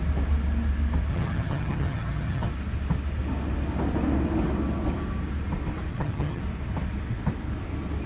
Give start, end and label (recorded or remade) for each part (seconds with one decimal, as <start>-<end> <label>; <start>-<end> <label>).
0.0-1.1 recorded; 1.1-2.5 remade; 2.5-5.9 recorded; 5.9-6.4 remade; 6.4-8.1 recorded